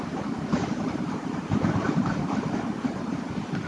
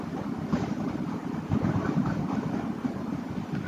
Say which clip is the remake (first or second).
first